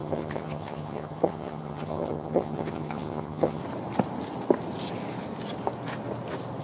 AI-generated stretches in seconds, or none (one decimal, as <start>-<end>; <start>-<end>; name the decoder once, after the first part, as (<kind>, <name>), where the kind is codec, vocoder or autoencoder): 0.0-3.6 (vocoder, HiFi-GAN)